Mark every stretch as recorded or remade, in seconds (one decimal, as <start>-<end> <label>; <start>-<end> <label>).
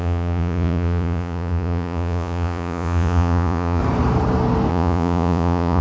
0.0-3.8 remade; 3.8-4.7 recorded; 4.7-5.8 remade